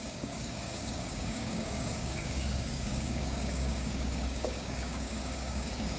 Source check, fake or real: fake